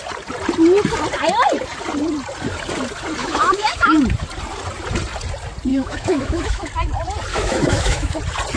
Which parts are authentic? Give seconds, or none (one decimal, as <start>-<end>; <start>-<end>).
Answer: 0.0-3.2; 4.0-5.7; 6.7-7.3; 8.2-8.6

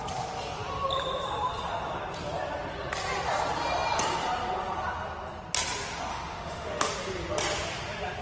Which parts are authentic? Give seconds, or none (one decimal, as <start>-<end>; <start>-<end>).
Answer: 0.0-6.1; 6.9-8.2

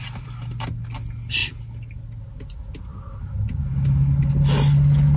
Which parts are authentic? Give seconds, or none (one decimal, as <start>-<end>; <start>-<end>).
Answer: 0.0-5.2

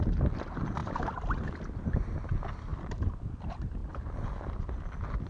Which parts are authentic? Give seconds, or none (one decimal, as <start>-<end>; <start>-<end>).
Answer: 0.0-2.7; 3.4-3.8

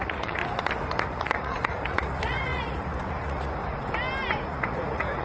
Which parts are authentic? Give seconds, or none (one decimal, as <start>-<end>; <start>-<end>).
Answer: 0.4-1.0; 3.6-4.4

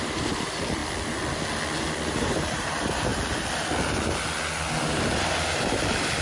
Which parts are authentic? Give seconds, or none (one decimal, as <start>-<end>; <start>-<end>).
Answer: 0.8-2.1; 3.1-4.9

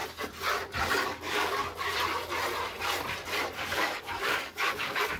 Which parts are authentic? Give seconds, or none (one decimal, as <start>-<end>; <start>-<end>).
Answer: 0.0-0.8; 1.6-3.6